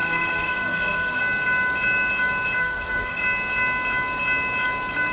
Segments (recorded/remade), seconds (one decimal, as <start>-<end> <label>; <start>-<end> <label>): 0.0-1.2 remade; 1.2-2.6 recorded; 2.6-3.2 remade; 3.2-5.1 recorded